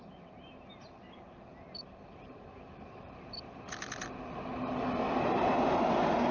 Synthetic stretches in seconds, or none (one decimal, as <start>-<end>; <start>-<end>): none